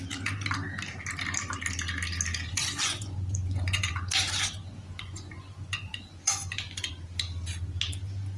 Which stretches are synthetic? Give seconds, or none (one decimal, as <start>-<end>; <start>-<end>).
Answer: 2.5-6.9